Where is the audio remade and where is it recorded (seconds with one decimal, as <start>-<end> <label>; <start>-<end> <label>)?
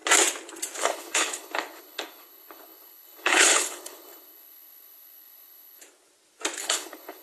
0.0-0.8 recorded; 0.8-5.8 remade; 5.8-6.6 recorded; 6.6-7.2 remade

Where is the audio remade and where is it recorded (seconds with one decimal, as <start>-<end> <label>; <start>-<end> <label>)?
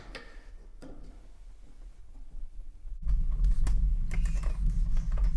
0.0-0.5 recorded; 0.5-1.1 remade; 1.1-2.0 recorded; 2.0-3.1 remade; 3.1-5.4 recorded